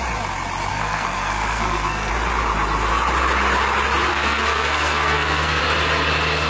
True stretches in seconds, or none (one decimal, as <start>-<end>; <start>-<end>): 0.0-0.7; 2.1-4.1; 5.6-6.5